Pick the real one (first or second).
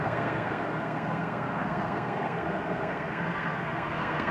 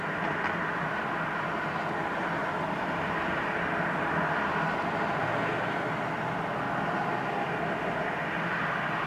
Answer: second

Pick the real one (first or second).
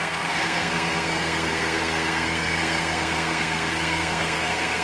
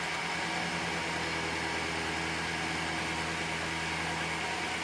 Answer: second